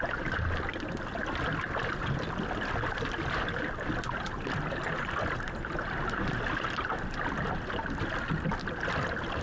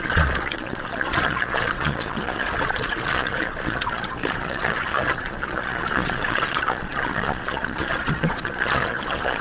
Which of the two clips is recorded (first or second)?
first